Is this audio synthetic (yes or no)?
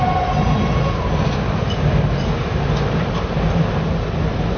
no